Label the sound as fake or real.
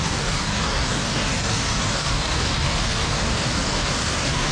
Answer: fake